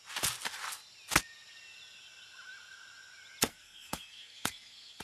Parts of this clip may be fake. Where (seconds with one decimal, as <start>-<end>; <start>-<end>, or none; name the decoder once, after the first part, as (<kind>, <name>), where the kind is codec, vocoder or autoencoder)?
3.5-5.0 (codec, SNAC)